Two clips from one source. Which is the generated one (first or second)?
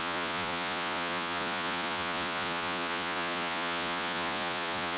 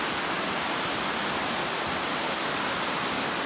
first